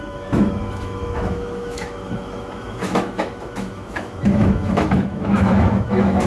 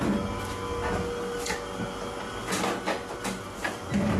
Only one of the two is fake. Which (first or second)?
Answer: first